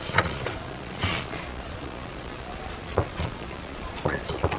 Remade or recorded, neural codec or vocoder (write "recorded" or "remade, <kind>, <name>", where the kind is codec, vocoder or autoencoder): remade, vocoder, Vocos